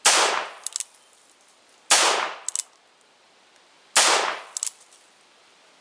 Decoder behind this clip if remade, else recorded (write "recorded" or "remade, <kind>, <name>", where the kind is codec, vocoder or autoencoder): recorded